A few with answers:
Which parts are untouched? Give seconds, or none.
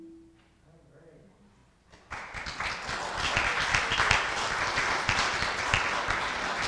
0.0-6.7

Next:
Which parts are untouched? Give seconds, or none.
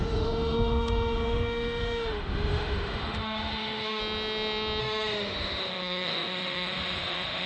4.0-4.8